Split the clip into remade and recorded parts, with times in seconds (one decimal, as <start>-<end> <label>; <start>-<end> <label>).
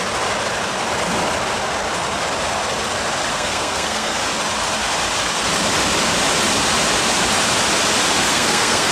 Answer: 0.0-3.3 recorded; 3.3-4.2 remade; 4.2-8.2 recorded; 8.2-8.9 remade